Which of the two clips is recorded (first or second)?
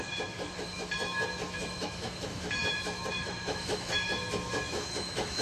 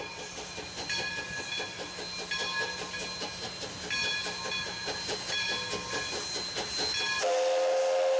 second